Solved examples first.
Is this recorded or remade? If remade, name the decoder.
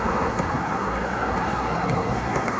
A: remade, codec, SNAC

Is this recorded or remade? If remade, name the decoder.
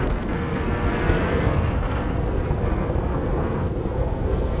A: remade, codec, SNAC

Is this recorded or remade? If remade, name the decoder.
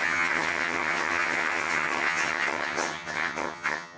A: remade, vocoder, HiFi-GAN